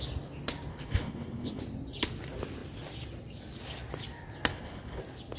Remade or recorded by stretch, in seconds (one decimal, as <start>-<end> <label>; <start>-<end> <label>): 0.0-0.7 recorded; 0.7-1.6 remade; 1.6-4.5 recorded; 4.5-5.0 remade; 5.0-5.4 recorded

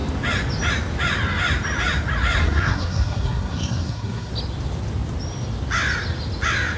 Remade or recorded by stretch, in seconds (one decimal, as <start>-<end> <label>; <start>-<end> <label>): 0.0-2.4 recorded; 2.4-4.3 remade; 4.3-6.8 recorded

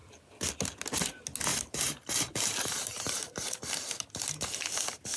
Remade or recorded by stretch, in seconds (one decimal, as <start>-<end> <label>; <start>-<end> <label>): 0.0-1.5 recorded; 1.5-4.6 remade; 4.6-5.2 recorded

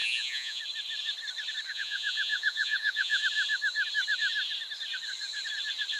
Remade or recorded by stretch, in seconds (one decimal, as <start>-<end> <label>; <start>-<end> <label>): 0.0-0.6 remade; 0.6-1.7 recorded; 1.7-3.2 remade; 3.2-6.0 recorded

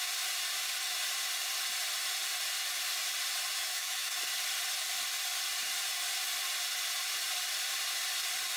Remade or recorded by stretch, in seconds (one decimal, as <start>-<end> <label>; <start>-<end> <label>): 0.0-3.5 recorded; 3.5-4.2 remade; 4.2-8.6 recorded